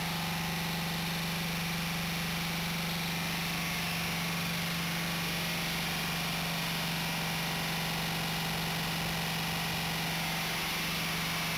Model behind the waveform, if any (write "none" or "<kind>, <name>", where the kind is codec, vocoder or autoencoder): none